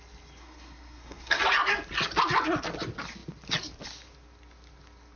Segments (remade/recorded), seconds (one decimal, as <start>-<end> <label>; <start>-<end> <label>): 0.0-0.4 recorded; 0.4-1.4 remade; 1.4-5.2 recorded